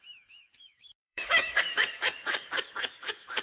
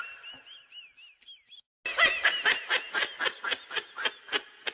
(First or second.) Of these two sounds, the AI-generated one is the first